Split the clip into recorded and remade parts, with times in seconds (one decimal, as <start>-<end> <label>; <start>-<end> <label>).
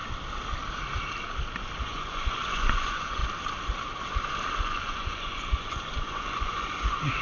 0.0-1.8 recorded; 1.8-3.2 remade; 3.2-4.6 recorded; 4.6-7.2 remade